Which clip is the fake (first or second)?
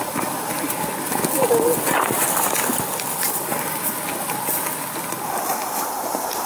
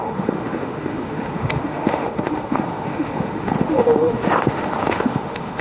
second